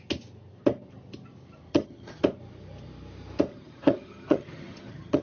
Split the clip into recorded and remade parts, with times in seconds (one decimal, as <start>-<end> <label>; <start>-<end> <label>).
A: 0.0-1.7 recorded; 1.7-2.2 remade; 2.2-3.5 recorded; 3.5-5.2 remade